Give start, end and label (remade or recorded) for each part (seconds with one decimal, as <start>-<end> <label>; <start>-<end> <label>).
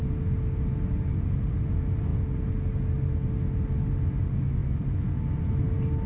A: 0.0-6.1 recorded